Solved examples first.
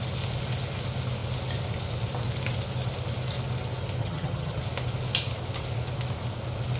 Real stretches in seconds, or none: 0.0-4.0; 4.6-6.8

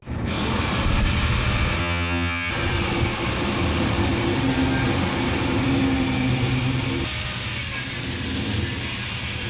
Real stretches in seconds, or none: 0.0-1.8; 2.5-9.5

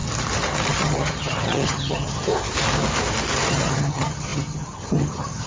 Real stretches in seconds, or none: 0.0-0.7; 2.3-3.5

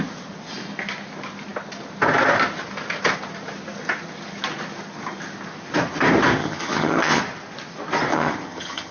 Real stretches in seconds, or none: 0.0-6.4; 7.2-8.1